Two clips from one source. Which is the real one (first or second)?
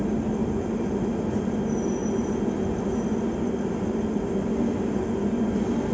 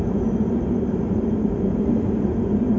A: first